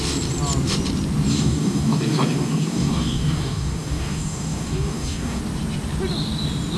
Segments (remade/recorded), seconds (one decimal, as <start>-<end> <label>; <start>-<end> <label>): 0.0-1.3 recorded; 1.3-5.4 remade; 5.4-6.8 recorded